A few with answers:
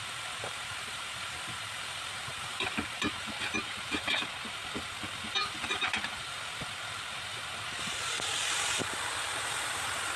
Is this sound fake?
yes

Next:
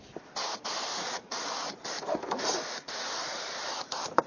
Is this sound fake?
no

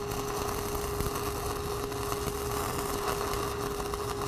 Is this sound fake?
no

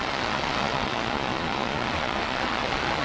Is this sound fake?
yes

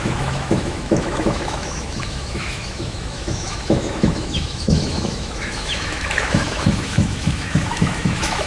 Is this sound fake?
yes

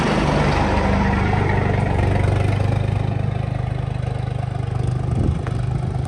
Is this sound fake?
no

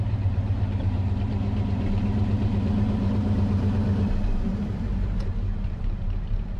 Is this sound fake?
yes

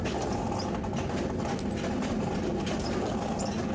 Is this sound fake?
no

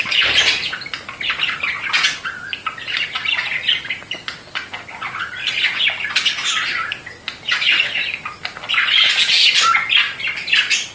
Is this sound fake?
no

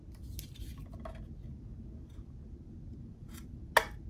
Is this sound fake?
no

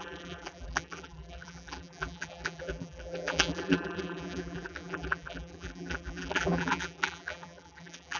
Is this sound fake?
yes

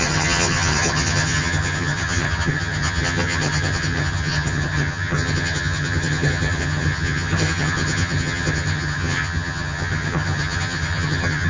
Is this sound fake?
yes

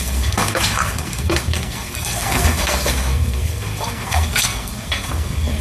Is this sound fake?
yes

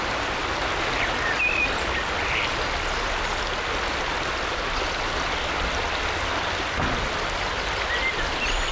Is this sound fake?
no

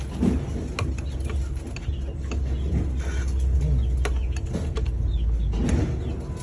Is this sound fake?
no